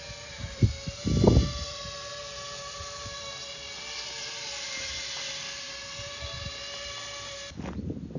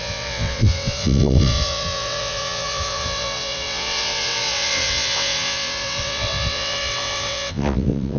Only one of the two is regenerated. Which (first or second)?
second